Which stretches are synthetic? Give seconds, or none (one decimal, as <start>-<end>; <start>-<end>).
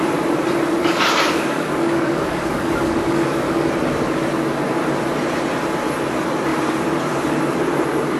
0.8-3.7